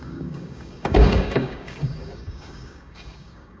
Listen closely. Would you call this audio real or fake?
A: fake